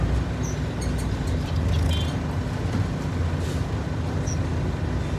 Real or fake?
real